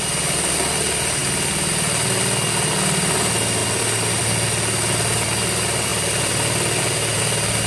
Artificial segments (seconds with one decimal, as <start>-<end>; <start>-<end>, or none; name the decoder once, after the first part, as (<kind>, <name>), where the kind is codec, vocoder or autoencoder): 3.6-4.2 (vocoder, BigVGAN v2); 5.9-7.2